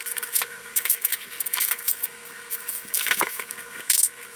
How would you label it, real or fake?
fake